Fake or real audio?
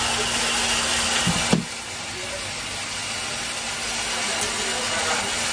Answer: real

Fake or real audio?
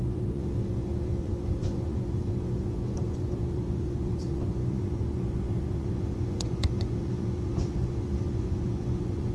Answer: fake